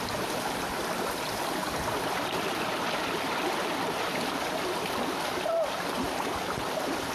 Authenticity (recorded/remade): recorded